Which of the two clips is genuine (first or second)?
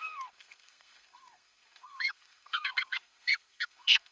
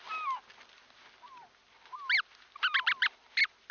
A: second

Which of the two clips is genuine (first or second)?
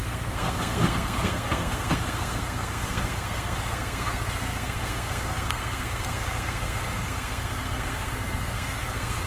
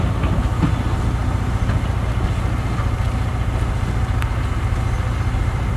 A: second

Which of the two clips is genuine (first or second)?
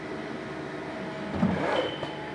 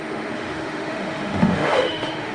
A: first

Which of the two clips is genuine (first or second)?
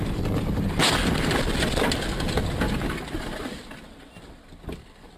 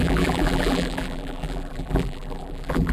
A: first